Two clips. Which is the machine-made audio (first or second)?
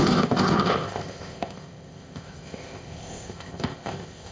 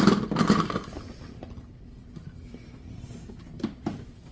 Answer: first